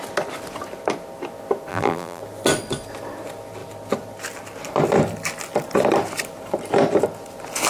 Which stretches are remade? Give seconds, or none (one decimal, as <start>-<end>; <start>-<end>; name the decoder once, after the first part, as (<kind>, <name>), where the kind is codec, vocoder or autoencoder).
1.7-2.2 (vocoder, BigVGAN v2)